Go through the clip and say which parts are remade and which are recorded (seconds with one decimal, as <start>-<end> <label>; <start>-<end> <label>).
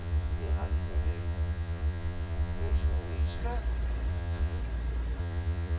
0.0-3.4 remade; 3.4-4.1 recorded; 4.1-4.6 remade; 4.6-5.2 recorded; 5.2-5.8 remade